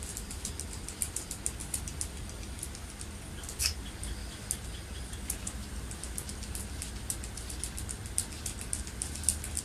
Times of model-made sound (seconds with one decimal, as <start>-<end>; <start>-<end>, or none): none